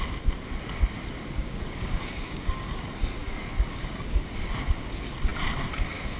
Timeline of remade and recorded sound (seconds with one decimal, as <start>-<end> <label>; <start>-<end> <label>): 0.0-1.4 recorded; 1.4-2.7 remade; 2.7-3.2 recorded; 3.2-4.3 remade; 4.3-6.2 recorded